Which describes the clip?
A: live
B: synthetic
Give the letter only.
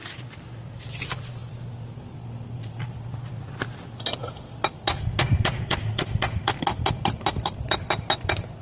A